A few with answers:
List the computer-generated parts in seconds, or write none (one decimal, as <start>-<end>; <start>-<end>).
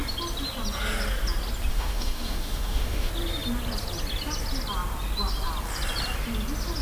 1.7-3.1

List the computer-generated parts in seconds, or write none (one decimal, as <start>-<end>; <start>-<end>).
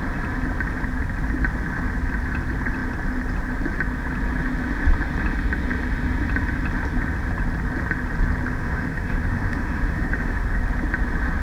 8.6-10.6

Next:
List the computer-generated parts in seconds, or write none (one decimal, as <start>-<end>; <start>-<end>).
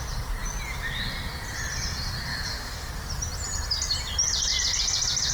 2.3-2.9